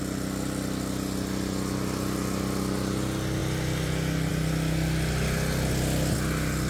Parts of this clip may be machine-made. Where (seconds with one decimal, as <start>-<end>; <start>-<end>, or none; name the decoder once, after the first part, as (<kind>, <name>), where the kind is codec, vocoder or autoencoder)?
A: none